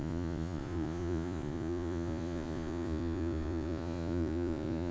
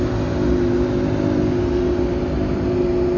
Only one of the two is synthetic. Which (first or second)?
first